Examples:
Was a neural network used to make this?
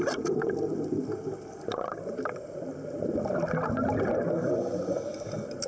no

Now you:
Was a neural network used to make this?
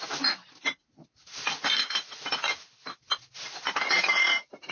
no